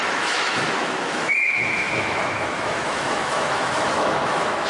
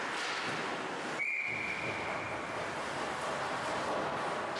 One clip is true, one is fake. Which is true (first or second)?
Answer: second